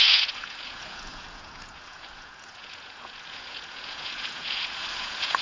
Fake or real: fake